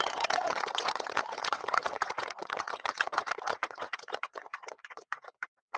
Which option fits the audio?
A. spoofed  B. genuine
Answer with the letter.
A